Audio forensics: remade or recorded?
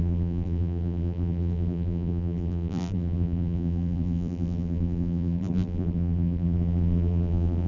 remade